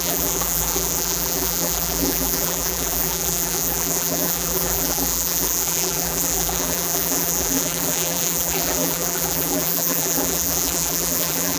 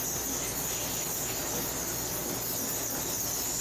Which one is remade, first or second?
first